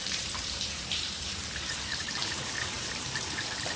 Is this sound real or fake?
fake